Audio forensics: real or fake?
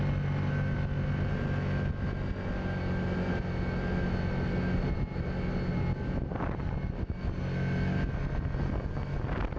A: real